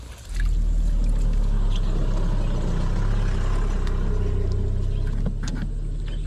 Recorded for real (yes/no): yes